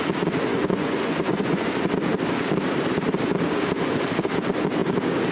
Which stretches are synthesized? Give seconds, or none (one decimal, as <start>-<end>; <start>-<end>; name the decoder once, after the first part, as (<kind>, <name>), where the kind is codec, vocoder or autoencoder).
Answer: 0.5-1.7 (vocoder, Vocos)